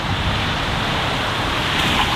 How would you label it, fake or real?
real